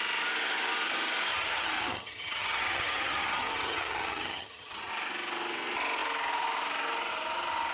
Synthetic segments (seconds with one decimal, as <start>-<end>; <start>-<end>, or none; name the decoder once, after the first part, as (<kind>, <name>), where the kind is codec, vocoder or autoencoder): 1.3-4.9 (vocoder, HiFi-GAN)